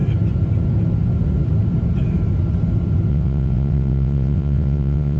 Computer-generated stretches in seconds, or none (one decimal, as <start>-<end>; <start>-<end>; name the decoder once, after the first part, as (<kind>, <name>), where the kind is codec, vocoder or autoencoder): 3.1-5.2 (vocoder, WaveNeXt)